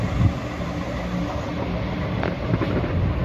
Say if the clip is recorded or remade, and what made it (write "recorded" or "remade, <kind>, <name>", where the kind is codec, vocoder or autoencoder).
recorded